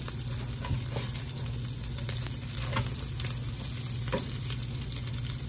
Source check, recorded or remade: recorded